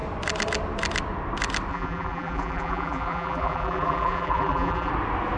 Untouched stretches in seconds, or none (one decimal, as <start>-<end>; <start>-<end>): 0.0-1.7; 4.9-5.4